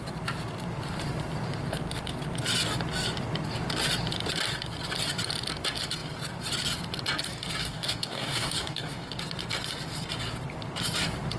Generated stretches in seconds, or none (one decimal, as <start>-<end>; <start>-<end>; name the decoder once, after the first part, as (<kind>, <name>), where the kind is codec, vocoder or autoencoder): 7.6-9.1 (codec, DAC)